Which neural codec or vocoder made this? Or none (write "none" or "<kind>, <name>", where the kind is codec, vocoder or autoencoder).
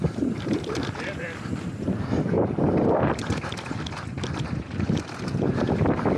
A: none